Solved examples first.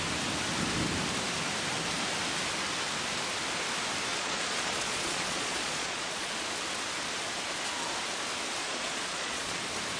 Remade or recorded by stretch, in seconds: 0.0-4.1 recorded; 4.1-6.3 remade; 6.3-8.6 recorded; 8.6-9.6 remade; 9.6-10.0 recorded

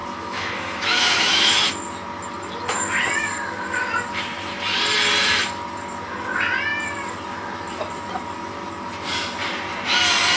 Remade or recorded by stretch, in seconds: 0.0-1.7 remade; 1.7-10.4 recorded

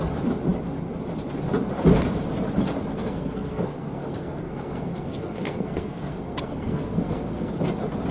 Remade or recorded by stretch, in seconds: 0.0-2.9 recorded; 2.9-7.5 remade; 7.5-8.1 recorded

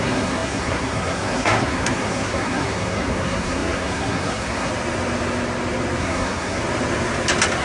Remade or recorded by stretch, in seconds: 0.0-4.7 remade; 4.7-6.0 recorded; 6.0-6.6 remade; 6.6-7.6 recorded

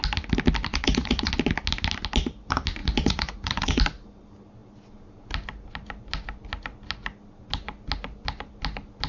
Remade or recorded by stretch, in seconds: 0.0-0.7 recorded; 0.7-1.3 remade; 1.3-2.8 recorded; 2.8-3.8 remade; 3.8-9.1 recorded

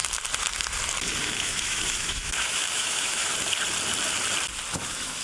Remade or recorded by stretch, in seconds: 0.0-1.2 recorded; 1.2-3.3 remade; 3.3-4.8 recorded; 4.8-5.2 remade

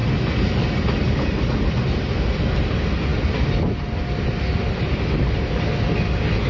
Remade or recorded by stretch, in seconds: 0.0-6.5 recorded